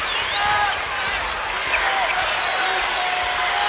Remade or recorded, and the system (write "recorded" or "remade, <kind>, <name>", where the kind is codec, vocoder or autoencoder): recorded